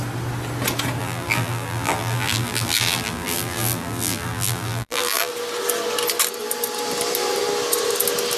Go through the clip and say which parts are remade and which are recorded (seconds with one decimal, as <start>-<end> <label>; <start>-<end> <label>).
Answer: 0.0-1.0 recorded; 1.0-5.3 remade; 5.3-8.4 recorded